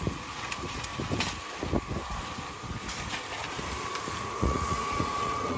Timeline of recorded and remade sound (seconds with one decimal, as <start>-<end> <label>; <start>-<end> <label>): 0.0-0.9 remade; 0.9-4.2 recorded; 4.2-5.6 remade